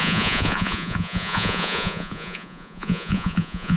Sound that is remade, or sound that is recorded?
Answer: remade